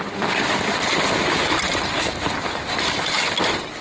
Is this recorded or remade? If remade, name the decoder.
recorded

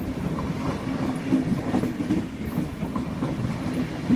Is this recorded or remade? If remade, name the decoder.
recorded